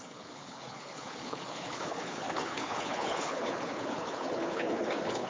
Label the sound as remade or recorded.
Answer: remade